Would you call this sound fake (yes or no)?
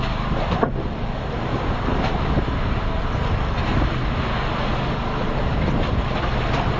no